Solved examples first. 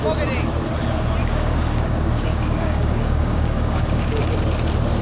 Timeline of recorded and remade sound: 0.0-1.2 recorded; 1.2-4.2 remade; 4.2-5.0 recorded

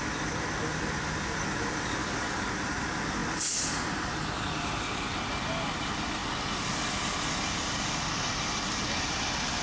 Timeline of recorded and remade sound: 0.0-2.0 recorded; 2.0-2.5 remade; 2.5-9.6 recorded

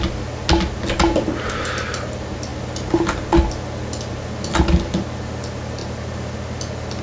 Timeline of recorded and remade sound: 0.0-7.0 recorded

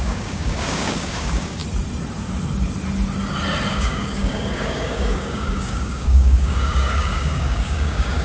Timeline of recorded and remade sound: 0.0-1.6 remade; 1.6-3.7 recorded; 3.7-8.2 remade